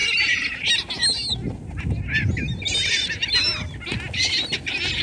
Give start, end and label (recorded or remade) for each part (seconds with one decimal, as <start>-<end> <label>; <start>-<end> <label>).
0.0-5.0 recorded